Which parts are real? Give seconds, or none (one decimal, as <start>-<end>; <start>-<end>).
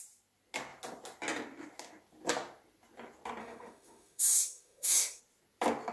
0.0-3.4; 5.2-5.9